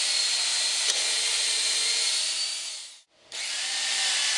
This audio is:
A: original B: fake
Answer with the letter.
A